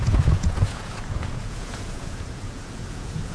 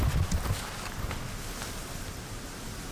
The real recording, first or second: second